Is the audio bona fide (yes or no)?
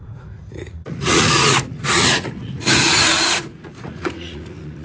no